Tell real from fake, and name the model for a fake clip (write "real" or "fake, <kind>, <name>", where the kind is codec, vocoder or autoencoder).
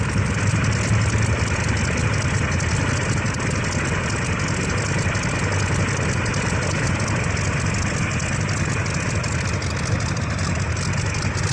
real